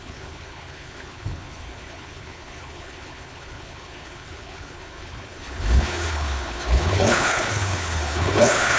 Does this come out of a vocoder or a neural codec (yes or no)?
yes